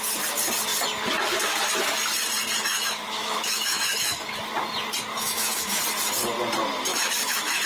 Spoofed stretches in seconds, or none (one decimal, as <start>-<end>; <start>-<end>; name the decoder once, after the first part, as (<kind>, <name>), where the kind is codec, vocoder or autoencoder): 2.7-4.3 (autoencoder, DAC-VAE); 5.1-5.8; 6.9-7.7